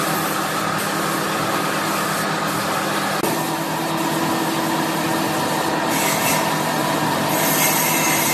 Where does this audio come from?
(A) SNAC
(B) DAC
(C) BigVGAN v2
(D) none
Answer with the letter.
D